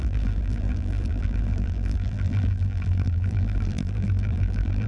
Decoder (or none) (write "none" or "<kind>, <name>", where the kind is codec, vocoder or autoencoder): vocoder, BigVGAN v2